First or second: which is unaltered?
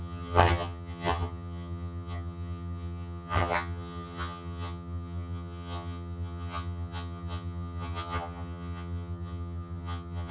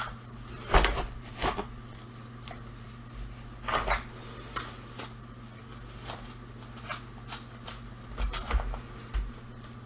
second